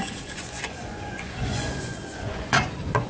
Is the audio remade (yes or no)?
yes